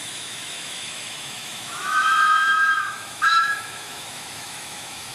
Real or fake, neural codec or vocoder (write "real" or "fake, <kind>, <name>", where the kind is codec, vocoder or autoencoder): fake, autoencoder, DAC-VAE